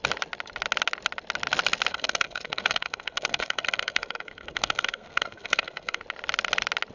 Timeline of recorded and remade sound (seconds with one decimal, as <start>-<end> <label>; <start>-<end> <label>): 0.0-1.9 recorded; 1.9-6.0 remade; 6.0-6.9 recorded